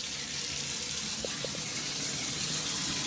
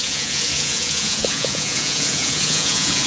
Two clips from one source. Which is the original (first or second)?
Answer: first